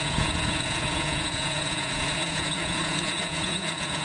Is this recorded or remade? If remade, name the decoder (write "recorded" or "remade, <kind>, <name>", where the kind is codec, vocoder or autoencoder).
remade, vocoder, Vocos